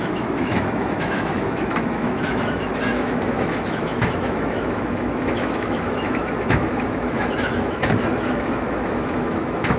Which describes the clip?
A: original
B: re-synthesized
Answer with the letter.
B